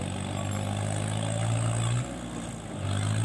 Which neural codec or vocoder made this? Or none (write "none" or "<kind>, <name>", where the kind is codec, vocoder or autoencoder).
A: none